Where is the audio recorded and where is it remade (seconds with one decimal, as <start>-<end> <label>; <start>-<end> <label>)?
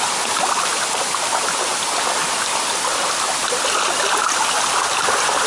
0.0-5.5 recorded